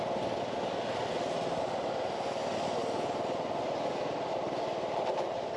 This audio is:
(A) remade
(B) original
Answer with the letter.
B